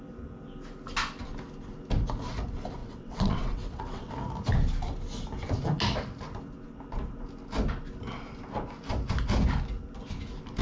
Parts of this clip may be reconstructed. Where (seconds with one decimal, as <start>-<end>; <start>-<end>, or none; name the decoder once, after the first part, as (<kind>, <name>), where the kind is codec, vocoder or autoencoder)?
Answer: 2.8-4.1 (vocoder, WaveNeXt)